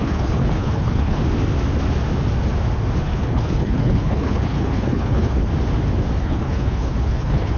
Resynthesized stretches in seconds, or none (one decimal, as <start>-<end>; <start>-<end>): 0.0-1.2; 3.0-5.5; 6.2-7.6